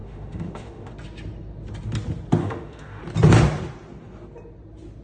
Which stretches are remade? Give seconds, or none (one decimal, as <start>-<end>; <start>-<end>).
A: 0.0-0.9; 2.4-3.0